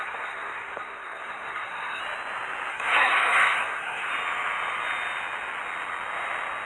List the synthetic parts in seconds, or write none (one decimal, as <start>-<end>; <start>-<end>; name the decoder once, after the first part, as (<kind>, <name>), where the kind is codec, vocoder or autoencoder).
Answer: 0.0-2.0 (codec, SNAC); 2.7-4.1